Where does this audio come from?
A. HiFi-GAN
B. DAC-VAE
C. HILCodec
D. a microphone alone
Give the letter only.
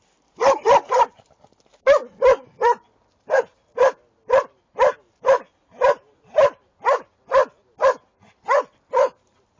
D